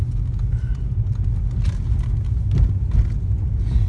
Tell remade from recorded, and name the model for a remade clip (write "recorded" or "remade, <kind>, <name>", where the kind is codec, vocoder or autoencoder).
recorded